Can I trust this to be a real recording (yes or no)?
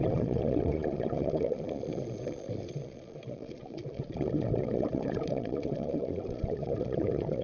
no